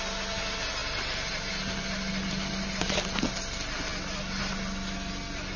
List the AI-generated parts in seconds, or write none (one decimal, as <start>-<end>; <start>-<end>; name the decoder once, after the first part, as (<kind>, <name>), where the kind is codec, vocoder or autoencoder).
none